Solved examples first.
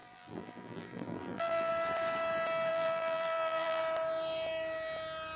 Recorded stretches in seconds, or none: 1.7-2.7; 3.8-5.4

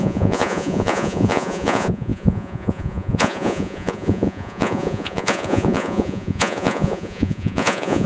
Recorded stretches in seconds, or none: none